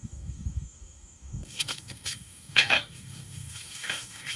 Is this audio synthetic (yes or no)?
yes